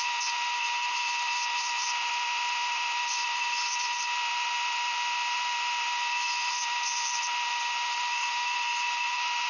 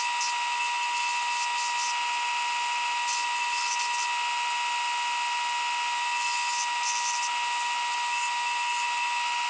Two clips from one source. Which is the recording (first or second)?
second